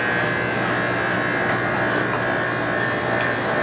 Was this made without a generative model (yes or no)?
yes